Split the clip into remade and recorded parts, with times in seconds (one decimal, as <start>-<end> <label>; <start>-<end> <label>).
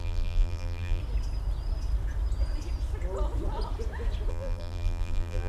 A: 0.0-1.0 remade; 1.0-4.3 recorded; 4.3-5.5 remade